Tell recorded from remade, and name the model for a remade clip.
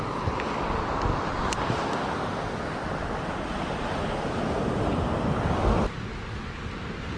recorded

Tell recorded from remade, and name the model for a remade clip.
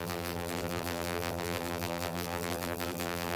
remade, vocoder, BigVGAN v2